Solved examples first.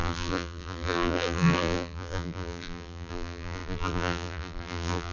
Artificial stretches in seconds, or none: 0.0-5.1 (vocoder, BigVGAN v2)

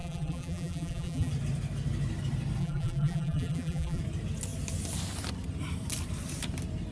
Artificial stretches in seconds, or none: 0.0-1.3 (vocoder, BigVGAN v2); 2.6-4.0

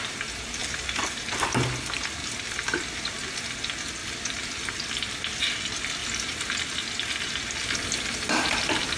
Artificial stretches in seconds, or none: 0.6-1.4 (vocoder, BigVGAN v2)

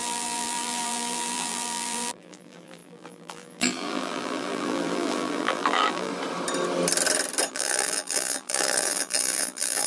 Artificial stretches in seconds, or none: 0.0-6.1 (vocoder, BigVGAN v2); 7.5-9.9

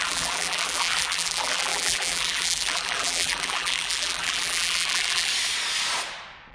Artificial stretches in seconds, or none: 0.0-5.3 (vocoder, BigVGAN v2)

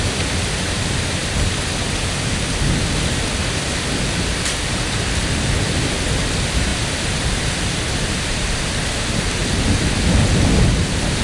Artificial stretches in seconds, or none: 0.0-1.2 (vocoder, BigVGAN v2); 4.3-9.4; 10.5-11.2

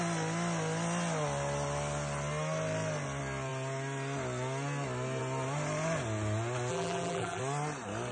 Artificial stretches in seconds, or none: 6.7-7.4 (vocoder, BigVGAN v2)

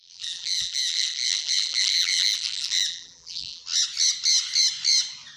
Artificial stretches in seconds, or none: 0.0-3.6 (vocoder, BigVGAN v2)